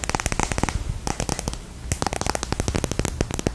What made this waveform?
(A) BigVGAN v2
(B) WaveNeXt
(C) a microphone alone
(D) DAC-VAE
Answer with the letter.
C